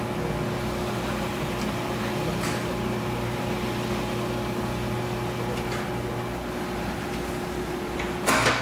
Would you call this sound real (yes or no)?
yes